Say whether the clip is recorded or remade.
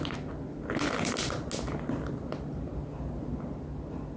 recorded